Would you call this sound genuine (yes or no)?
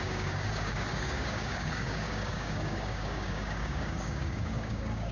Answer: no